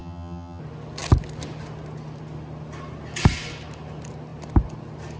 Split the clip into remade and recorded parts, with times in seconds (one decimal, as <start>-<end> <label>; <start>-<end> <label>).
0.0-0.6 remade; 0.6-5.2 recorded